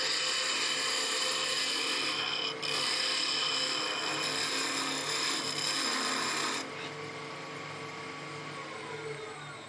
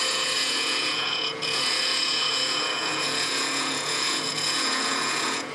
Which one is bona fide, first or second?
first